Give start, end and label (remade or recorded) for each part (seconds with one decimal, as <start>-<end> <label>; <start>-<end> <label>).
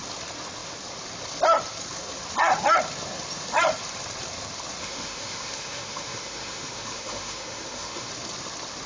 0.0-4.8 recorded; 4.8-8.1 remade; 8.1-8.9 recorded